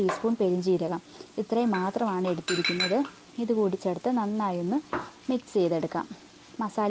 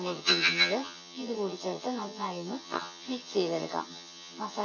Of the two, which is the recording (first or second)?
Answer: first